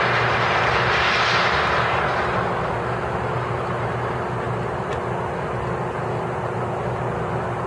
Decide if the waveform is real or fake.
real